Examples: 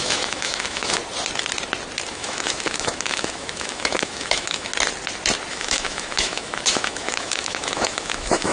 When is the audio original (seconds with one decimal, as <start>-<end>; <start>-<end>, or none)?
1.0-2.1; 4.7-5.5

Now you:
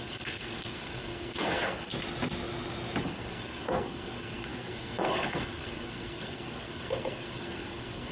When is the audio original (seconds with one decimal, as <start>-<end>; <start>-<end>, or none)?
1.9-3.0

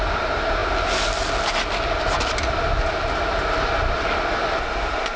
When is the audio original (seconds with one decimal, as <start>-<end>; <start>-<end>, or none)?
0.0-5.2

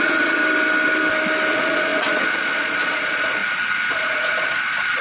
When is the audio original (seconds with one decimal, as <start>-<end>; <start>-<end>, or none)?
0.4-1.5; 3.4-3.9

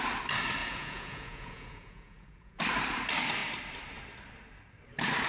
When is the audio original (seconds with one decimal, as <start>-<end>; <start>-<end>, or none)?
0.0-0.6; 2.6-5.3